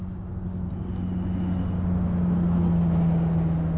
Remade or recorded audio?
recorded